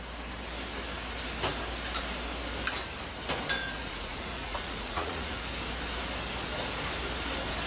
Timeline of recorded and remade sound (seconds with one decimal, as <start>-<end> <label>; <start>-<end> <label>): 0.0-3.7 recorded; 3.7-5.5 remade; 5.5-7.7 recorded